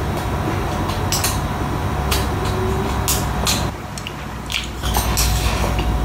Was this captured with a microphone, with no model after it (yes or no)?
yes